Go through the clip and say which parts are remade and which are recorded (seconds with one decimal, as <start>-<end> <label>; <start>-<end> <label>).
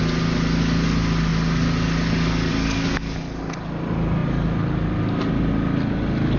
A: 0.0-6.4 recorded